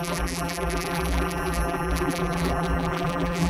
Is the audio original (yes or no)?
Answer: no